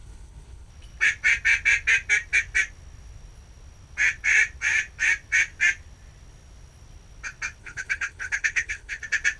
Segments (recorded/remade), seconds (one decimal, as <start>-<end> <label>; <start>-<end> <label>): 0.0-0.7 remade; 0.7-7.6 recorded; 7.6-9.0 remade; 9.0-9.4 recorded